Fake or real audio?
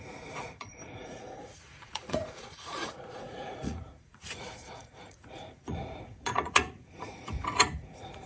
fake